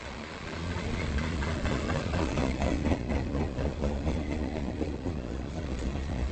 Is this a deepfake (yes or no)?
yes